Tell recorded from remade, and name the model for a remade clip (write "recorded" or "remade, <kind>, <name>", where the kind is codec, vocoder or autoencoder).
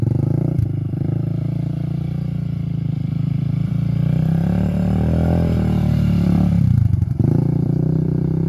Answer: remade, vocoder, BigVGAN v2